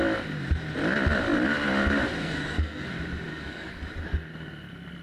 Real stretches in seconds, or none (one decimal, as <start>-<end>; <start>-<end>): 0.0-2.2; 2.9-3.3; 3.8-5.0